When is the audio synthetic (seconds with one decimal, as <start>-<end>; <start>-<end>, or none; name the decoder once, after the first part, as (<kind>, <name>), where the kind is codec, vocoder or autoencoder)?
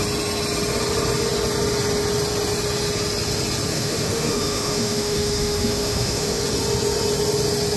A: 3.7-6.4 (autoencoder, DAC-VAE)